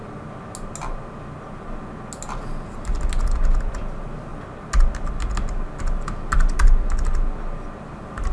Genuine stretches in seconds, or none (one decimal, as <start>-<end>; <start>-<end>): 0.0-8.3